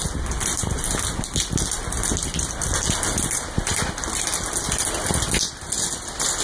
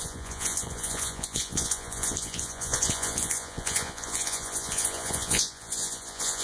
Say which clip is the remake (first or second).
second